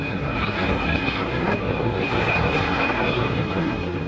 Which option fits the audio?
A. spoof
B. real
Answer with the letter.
A